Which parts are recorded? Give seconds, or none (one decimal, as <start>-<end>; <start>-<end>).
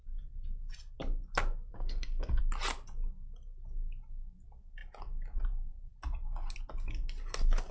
0.0-1.7; 2.4-7.7